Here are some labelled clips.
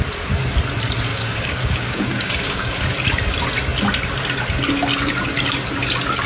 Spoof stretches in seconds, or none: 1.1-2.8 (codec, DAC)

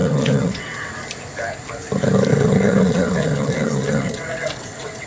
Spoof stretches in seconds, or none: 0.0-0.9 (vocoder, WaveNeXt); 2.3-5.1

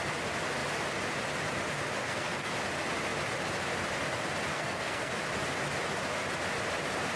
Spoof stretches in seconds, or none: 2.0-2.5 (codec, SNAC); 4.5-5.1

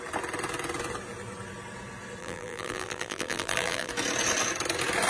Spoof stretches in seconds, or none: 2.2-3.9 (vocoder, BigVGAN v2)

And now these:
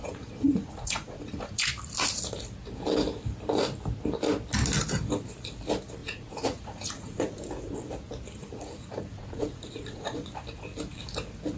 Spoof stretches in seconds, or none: 0.0-1.7 (vocoder, Vocos); 6.0-7.4; 8.4-10.3